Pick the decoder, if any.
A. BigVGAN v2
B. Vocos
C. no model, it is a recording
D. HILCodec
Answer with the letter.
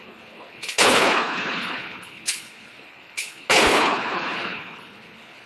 D